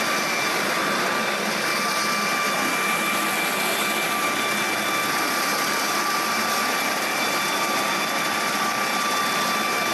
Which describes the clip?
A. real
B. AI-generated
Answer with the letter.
A